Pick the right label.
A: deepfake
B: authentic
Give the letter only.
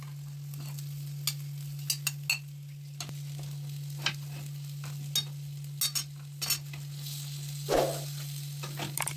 B